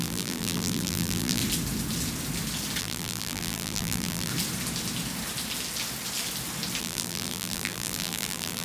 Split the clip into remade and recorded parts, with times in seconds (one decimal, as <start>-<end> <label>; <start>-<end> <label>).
0.0-1.4 remade; 1.4-2.8 recorded; 2.8-4.3 remade; 4.3-6.8 recorded; 6.8-8.6 remade